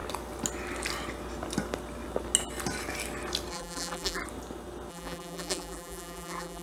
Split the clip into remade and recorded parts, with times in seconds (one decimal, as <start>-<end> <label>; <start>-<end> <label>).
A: 0.0-3.5 recorded; 3.5-4.2 remade; 4.2-4.9 recorded; 4.9-6.6 remade